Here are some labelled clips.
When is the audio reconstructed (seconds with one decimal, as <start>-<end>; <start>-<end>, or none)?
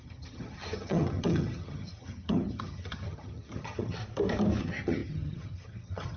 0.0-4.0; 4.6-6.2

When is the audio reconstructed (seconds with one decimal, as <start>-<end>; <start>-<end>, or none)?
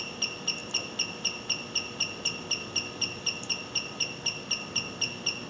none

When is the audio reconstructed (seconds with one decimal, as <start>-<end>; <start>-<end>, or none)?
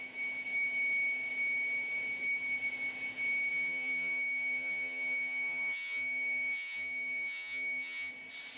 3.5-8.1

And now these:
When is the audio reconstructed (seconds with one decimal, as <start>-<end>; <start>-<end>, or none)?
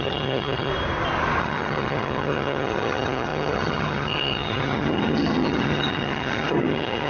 0.0-0.7; 1.4-7.1